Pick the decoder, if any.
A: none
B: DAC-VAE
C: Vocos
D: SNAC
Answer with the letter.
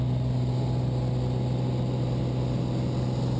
A